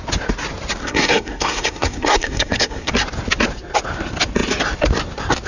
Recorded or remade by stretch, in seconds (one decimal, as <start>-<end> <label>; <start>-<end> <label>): 0.0-0.8 recorded; 0.8-2.9 remade; 2.9-5.5 recorded